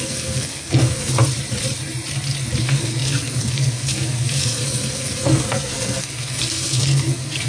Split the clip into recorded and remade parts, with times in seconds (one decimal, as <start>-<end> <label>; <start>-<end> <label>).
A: 0.0-1.1 remade; 1.1-2.6 recorded; 2.6-7.5 remade